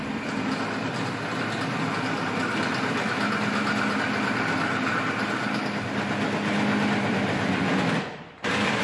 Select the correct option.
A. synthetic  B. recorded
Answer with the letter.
A